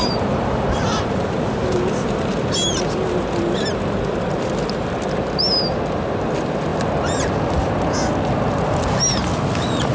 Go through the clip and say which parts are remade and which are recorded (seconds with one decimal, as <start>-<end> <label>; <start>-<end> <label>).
0.0-9.9 recorded